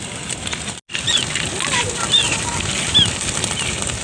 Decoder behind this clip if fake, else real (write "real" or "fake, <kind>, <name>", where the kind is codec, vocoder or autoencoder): real